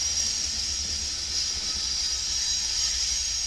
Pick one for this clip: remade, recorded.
recorded